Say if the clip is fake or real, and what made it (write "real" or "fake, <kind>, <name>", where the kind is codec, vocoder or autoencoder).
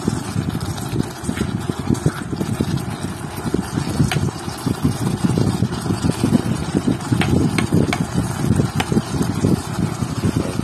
real